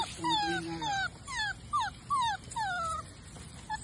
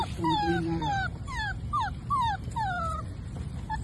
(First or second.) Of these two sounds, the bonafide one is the first